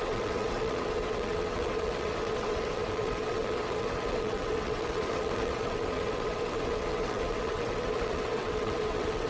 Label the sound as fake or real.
fake